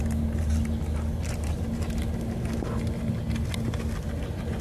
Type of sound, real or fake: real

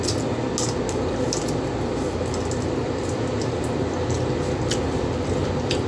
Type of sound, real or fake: real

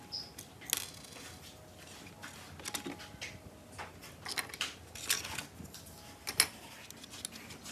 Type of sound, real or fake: real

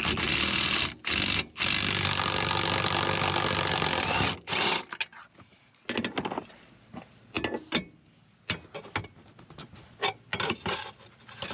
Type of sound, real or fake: real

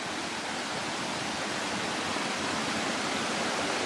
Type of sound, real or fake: real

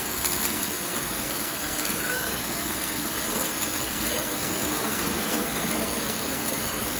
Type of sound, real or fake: fake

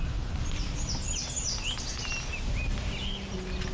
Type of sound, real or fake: real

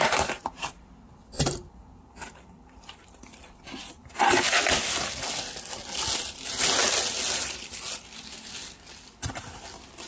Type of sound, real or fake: real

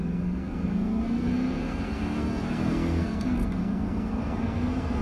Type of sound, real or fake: fake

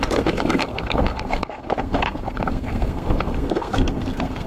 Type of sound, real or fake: fake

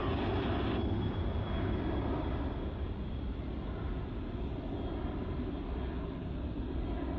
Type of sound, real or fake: real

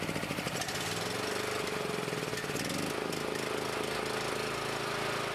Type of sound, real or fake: real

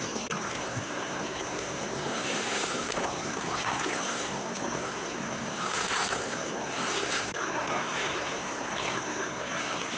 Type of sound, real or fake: fake